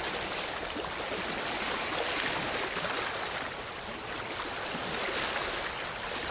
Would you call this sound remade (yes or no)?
no